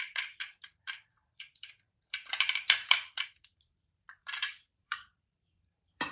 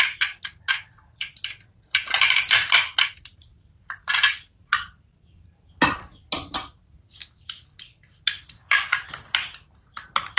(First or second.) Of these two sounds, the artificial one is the first